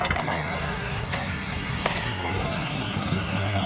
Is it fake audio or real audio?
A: fake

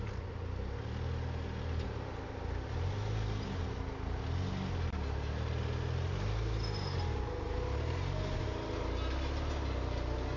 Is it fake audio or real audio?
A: real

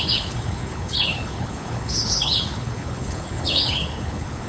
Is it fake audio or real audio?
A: fake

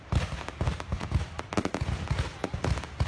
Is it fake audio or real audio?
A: real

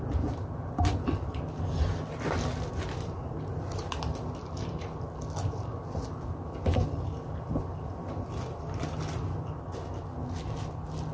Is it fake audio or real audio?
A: real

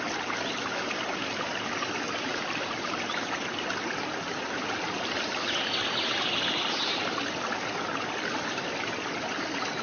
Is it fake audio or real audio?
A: real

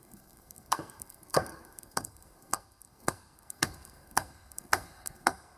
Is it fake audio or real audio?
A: fake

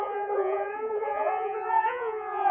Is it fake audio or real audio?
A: fake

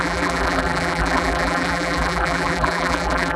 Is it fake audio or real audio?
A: fake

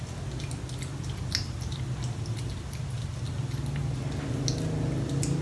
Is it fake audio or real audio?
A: real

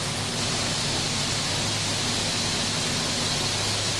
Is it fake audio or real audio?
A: real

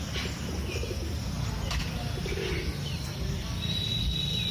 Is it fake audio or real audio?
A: real